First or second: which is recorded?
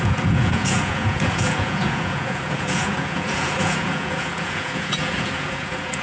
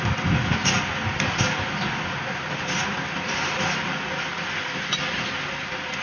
second